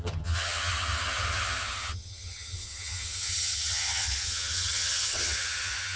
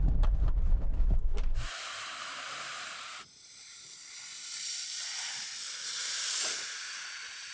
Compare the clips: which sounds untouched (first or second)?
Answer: second